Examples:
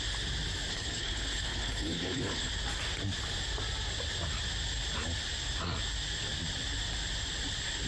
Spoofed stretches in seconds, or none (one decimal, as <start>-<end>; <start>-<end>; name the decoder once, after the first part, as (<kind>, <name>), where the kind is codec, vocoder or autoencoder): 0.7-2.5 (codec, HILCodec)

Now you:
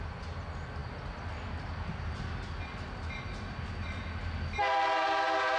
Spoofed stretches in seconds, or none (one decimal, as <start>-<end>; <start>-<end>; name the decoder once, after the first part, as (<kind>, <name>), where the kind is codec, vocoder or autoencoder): none

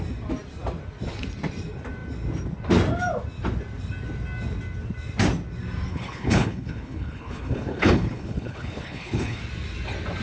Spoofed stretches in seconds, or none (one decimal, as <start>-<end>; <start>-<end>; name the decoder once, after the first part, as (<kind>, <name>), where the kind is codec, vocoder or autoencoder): 5.9-9.4 (codec, HILCodec)

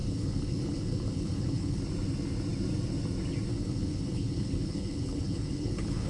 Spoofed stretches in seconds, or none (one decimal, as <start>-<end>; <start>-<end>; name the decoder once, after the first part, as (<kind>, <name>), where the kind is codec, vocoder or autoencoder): 0.0-1.8 (codec, HILCodec); 3.5-6.1

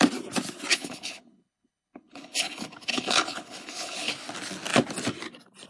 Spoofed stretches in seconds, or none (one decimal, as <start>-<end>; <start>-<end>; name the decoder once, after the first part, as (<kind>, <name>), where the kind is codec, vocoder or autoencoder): 0.7-4.1 (codec, HILCodec)